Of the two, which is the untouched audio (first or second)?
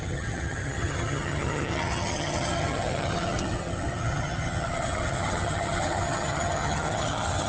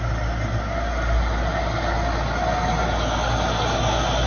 second